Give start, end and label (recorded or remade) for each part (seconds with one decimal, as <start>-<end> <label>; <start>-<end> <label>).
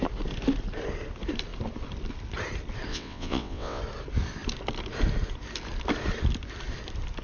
0.0-2.9 recorded; 2.9-3.8 remade; 3.8-7.2 recorded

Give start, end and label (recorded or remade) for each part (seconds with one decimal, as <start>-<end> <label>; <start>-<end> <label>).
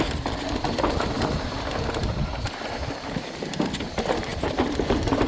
0.0-5.3 recorded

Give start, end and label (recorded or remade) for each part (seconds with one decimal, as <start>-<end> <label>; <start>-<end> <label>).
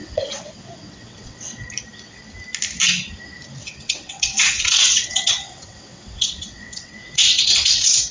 0.0-1.6 remade; 1.6-3.6 recorded; 3.6-8.1 remade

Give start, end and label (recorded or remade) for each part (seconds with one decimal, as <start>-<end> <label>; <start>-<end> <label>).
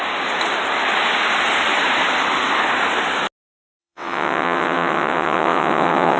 0.0-3.8 recorded; 3.8-6.2 remade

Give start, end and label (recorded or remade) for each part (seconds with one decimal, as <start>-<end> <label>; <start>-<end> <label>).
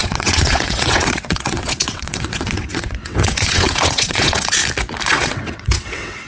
0.0-4.6 remade; 4.6-5.1 recorded; 5.1-6.3 remade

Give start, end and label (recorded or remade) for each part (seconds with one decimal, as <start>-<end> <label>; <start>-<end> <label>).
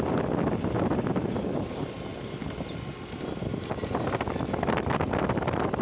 0.0-5.8 recorded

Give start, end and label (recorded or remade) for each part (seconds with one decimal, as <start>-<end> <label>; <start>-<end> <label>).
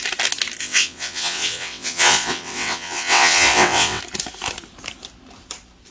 0.0-0.6 recorded; 0.6-4.0 remade; 4.0-5.9 recorded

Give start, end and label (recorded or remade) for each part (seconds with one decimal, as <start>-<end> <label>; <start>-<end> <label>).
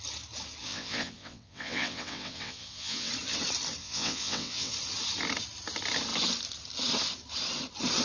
0.0-0.6 recorded; 0.6-3.1 remade; 3.1-3.8 recorded; 3.8-4.7 remade; 4.7-8.0 recorded